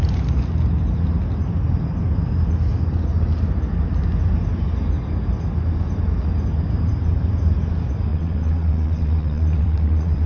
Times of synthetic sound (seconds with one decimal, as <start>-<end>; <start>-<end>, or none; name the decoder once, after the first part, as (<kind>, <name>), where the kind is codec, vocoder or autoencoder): 8.1-10.3 (vocoder, WaveNeXt)